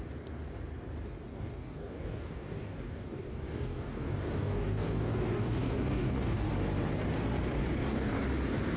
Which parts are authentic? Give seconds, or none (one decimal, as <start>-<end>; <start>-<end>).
0.0-1.3; 6.5-7.6; 8.2-8.8